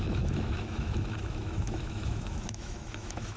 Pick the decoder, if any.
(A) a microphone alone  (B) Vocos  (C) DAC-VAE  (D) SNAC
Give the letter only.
C